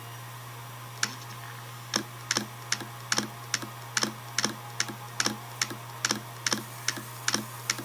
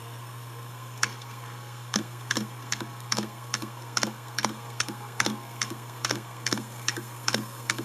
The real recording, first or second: first